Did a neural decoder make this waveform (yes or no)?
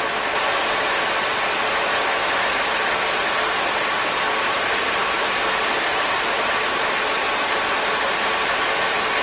no